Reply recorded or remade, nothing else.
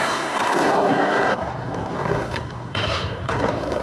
remade